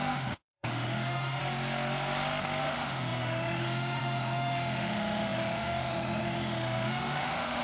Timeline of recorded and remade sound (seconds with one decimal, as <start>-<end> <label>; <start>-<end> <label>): 0.0-1.4 remade; 1.4-2.6 recorded; 2.6-7.6 remade